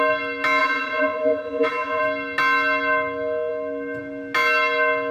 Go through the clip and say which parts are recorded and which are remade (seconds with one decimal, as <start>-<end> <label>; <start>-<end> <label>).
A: 0.0-0.6 recorded; 0.6-2.0 remade; 2.0-5.1 recorded